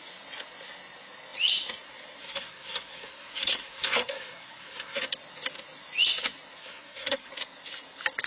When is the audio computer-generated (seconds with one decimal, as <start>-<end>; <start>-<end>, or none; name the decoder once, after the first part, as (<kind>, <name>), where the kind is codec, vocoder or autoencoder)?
2.2-5.0 (codec, SNAC); 6.6-7.3